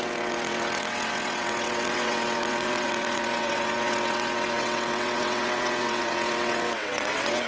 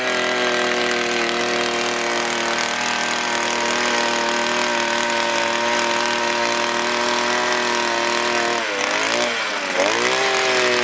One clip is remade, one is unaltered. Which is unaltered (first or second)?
second